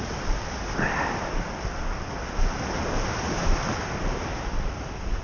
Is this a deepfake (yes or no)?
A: no